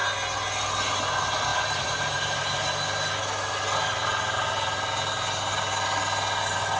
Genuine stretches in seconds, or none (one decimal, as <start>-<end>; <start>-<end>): 0.0-1.5; 2.6-6.8